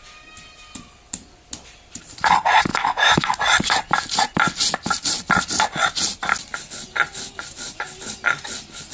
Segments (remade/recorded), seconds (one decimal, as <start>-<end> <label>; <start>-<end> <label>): 0.0-2.7 recorded; 2.7-3.3 remade; 3.3-8.9 recorded